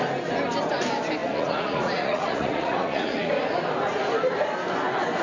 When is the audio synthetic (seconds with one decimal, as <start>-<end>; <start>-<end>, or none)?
1.2-3.3